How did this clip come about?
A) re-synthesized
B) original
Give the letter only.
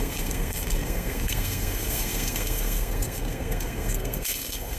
A